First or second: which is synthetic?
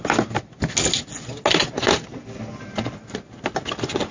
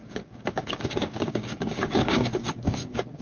second